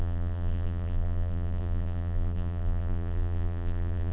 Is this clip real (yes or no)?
no